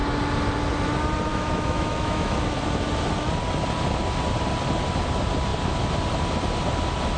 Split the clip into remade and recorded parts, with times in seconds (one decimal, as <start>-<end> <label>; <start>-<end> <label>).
0.0-1.3 recorded; 1.3-2.6 remade; 2.6-7.2 recorded